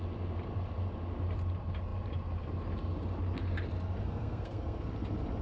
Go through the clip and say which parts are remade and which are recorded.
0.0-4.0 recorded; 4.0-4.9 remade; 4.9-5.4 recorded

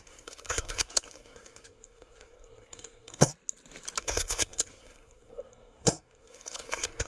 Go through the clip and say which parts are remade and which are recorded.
0.0-3.3 remade; 3.3-4.0 recorded; 4.0-7.1 remade

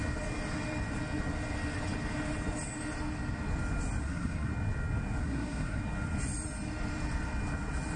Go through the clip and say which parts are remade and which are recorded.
0.0-4.0 recorded; 4.0-4.5 remade; 4.5-5.2 recorded; 5.2-5.8 remade; 5.8-8.0 recorded

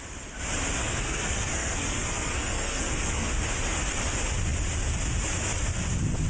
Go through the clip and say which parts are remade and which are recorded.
0.0-0.8 recorded; 0.8-3.3 remade; 3.3-6.3 recorded